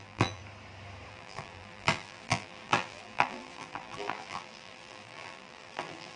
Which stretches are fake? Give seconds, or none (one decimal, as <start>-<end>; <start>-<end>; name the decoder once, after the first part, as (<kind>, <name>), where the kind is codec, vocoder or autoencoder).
0.0-0.4 (vocoder, BigVGAN v2); 1.1-6.2